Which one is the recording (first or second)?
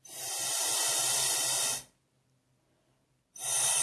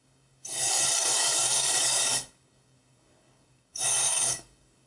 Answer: first